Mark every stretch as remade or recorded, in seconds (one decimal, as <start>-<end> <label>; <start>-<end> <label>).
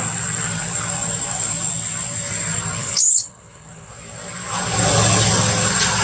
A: 0.0-2.8 recorded; 2.8-3.9 remade; 3.9-6.0 recorded